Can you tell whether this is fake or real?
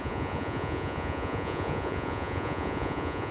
fake